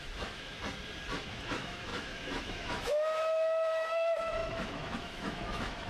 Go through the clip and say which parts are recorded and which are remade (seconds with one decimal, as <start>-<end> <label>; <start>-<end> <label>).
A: 0.0-0.6 remade; 0.6-1.3 recorded; 1.3-5.9 remade